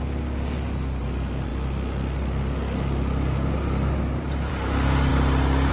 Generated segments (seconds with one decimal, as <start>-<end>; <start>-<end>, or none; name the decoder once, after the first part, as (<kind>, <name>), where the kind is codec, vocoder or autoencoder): none